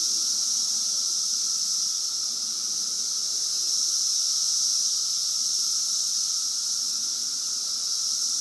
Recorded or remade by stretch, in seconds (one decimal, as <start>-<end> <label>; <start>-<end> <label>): 0.0-3.2 recorded; 3.2-4.1 remade; 4.1-4.7 recorded; 4.7-7.3 remade; 7.3-8.4 recorded

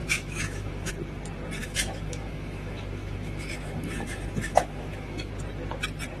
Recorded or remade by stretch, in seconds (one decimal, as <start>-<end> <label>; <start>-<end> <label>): 0.0-0.9 remade; 0.9-1.6 recorded; 1.6-5.3 remade; 5.3-6.2 recorded

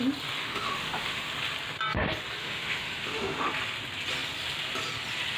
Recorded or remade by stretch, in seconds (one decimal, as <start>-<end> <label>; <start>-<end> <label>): 0.0-0.4 recorded; 0.4-1.3 remade; 1.3-2.4 recorded; 2.4-3.5 remade; 3.5-5.4 recorded

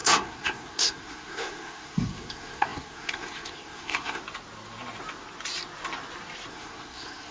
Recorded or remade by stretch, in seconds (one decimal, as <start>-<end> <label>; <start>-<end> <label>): 0.0-4.2 remade; 4.2-6.5 recorded; 6.5-7.3 remade

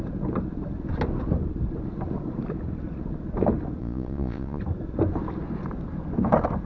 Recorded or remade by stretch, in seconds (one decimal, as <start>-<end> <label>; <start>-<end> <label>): 0.0-3.8 recorded; 3.8-4.6 remade; 4.6-6.7 recorded

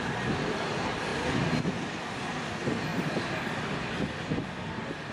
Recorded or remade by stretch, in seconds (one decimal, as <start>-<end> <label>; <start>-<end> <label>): 0.0-1.1 remade; 1.1-2.0 recorded; 2.0-5.1 remade

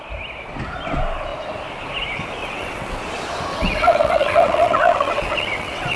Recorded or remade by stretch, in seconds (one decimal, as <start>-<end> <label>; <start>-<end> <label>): 0.0-2.4 recorded; 2.4-3.0 remade; 3.0-3.5 recorded; 3.5-6.0 remade

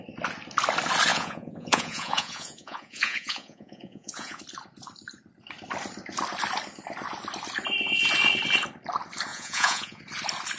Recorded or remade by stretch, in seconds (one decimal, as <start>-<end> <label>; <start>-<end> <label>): 0.0-1.1 recorded; 1.1-4.4 remade; 4.4-9.3 recorded; 9.3-10.0 remade; 10.0-10.6 recorded